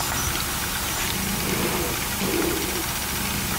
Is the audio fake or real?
real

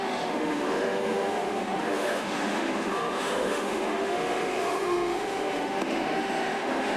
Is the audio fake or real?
fake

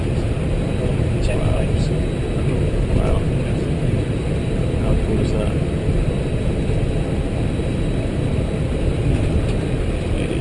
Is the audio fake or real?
real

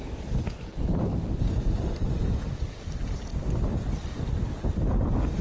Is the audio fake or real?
real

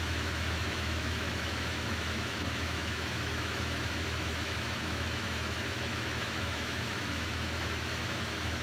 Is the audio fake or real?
fake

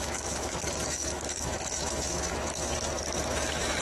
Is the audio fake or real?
fake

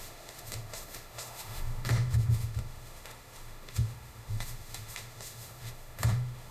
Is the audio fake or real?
fake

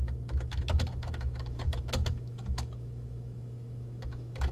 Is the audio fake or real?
fake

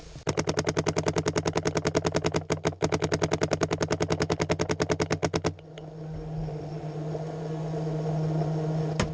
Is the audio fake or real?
real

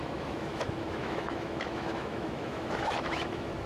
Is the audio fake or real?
fake